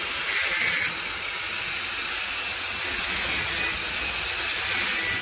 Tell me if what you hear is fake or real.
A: real